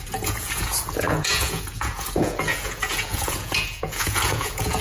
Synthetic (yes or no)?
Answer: yes